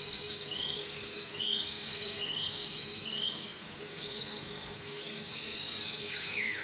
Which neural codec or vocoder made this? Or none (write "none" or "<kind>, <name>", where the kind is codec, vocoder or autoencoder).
codec, SNAC